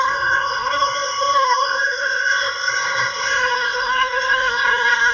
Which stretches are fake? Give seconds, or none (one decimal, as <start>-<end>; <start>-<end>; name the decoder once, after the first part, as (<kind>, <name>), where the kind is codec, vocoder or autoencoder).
0.0-5.1 (codec, SNAC)